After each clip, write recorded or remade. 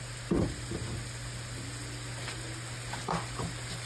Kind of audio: recorded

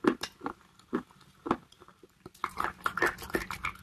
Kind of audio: recorded